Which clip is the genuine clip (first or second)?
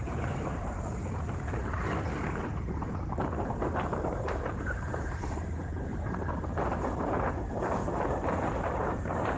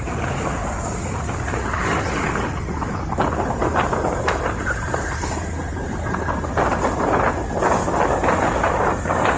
second